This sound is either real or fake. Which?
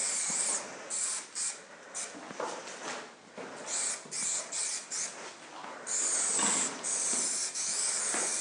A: real